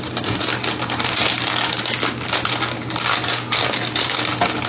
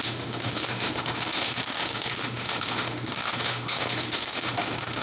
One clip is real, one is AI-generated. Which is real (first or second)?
first